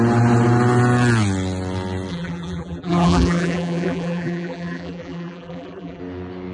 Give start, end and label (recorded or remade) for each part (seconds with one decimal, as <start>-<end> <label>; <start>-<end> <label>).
0.0-2.1 recorded; 2.1-6.0 remade; 6.0-6.5 recorded